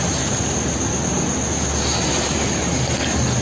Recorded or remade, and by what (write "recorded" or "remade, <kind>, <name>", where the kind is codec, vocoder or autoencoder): recorded